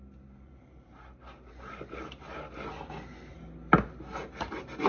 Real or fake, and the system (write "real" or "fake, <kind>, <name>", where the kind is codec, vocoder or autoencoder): real